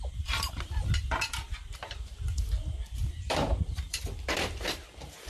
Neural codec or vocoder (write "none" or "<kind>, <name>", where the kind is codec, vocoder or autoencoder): vocoder, BigVGAN v2